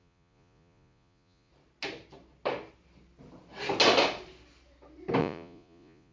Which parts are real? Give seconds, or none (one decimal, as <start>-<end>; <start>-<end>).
1.5-5.2